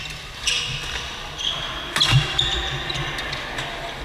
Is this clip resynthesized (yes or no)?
no